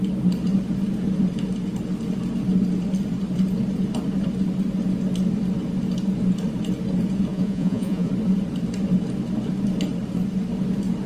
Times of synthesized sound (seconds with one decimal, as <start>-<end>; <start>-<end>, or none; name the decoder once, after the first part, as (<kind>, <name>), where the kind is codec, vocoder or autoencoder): 7.3-8.1 (vocoder, Vocos)